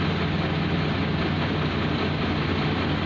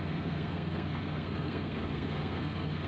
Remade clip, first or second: second